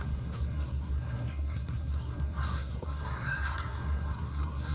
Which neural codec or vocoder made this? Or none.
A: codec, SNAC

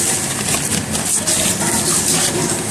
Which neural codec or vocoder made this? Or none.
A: none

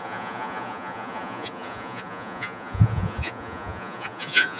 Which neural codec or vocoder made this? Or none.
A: vocoder, Vocos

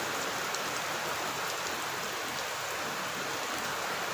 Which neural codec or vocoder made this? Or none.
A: none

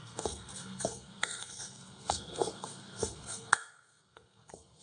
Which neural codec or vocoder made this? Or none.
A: codec, SNAC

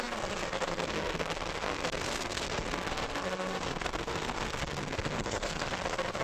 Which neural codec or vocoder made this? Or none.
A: codec, SNAC